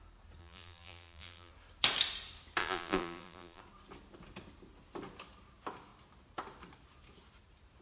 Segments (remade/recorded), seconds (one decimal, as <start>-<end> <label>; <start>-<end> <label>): 0.0-0.4 recorded; 0.4-1.5 remade; 1.5-2.6 recorded; 2.6-3.6 remade; 3.6-7.8 recorded